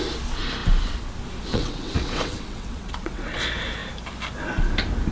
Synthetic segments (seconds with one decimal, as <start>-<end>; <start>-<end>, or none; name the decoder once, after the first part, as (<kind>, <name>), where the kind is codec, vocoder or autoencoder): 1.5-3.4 (vocoder, WaveNeXt)